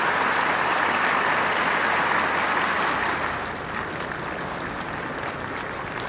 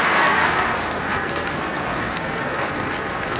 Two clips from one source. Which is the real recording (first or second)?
first